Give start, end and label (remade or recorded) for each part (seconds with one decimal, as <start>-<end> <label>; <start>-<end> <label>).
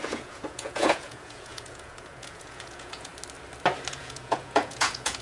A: 0.0-3.1 remade; 3.1-3.9 recorded; 3.9-5.2 remade